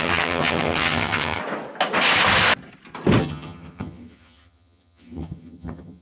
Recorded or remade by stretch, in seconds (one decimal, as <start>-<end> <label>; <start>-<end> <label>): 0.0-1.4 remade; 1.4-3.2 recorded; 3.2-6.0 remade